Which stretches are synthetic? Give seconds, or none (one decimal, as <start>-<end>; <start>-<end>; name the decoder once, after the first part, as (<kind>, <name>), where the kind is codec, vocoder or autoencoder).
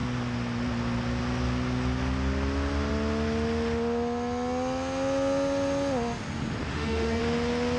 6.7-7.2 (autoencoder, DAC-VAE)